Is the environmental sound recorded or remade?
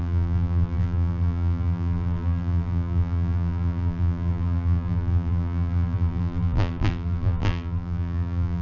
remade